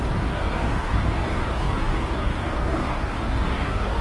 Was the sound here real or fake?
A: fake